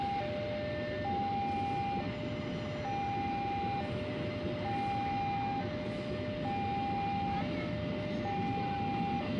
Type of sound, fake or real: real